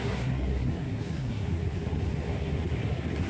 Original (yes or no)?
no